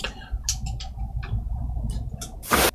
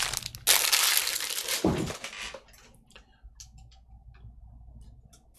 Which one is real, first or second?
second